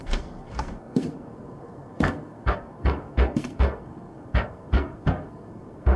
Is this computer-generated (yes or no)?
yes